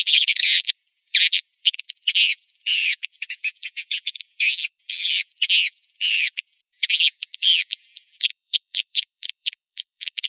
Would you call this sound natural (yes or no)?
no